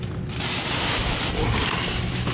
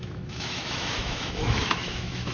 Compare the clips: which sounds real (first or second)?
first